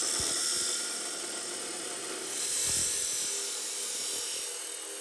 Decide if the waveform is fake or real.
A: real